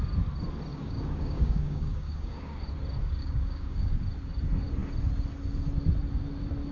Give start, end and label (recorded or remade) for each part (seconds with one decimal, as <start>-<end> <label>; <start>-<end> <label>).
0.0-0.7 recorded; 0.7-2.6 remade; 2.6-3.2 recorded; 3.2-4.0 remade; 4.0-6.7 recorded